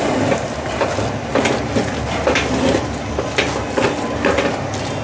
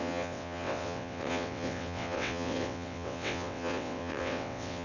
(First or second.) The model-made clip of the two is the second